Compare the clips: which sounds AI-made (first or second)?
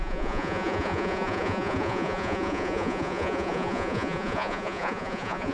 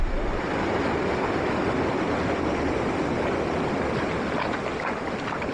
first